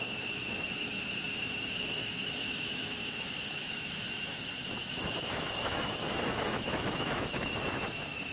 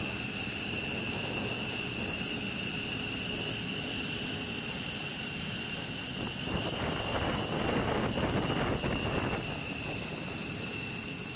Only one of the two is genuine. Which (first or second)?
second